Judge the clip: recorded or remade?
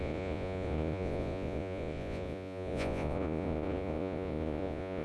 remade